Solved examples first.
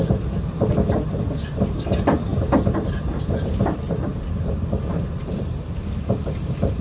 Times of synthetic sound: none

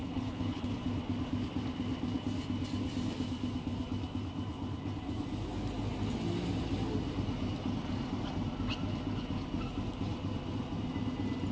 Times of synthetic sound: 0.0-0.7

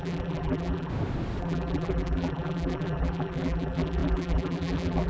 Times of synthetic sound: 0.0-0.9; 1.4-5.1

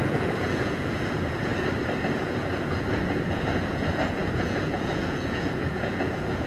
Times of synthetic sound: 0.0-1.5; 2.0-6.5

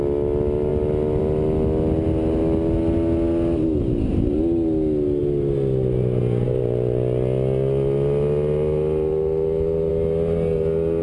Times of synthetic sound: none

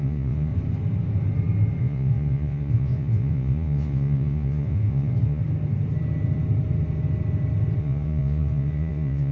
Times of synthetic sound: 0.0-0.5; 1.8-5.4; 7.8-9.3